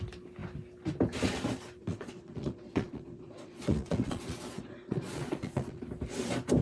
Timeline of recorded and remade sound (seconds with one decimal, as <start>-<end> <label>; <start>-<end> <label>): 0.0-1.8 recorded; 1.8-5.8 remade; 5.8-6.6 recorded